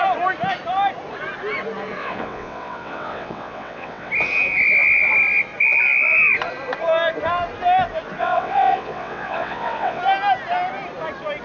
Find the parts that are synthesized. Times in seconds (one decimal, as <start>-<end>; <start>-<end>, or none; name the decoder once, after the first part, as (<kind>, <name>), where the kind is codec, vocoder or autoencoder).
2.0-4.1 (vocoder, WaveNeXt); 8.2-10.0